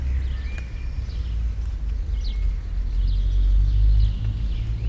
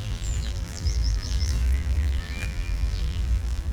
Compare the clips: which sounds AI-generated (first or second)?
second